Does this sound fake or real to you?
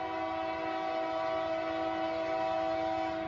real